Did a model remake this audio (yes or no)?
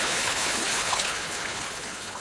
yes